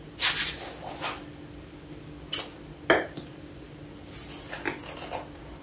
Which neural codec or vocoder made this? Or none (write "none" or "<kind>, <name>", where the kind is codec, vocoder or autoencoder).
none